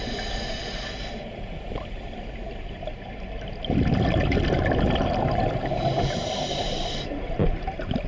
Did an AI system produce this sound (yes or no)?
no